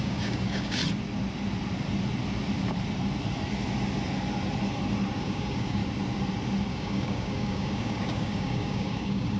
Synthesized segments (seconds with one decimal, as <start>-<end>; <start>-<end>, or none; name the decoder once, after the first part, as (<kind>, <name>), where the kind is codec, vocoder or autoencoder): 0.0-0.8 (codec, DAC); 5.2-5.8; 6.7-9.4